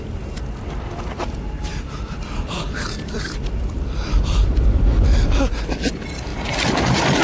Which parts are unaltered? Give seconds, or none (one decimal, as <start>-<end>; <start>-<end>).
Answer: 0.0-1.7; 5.4-6.3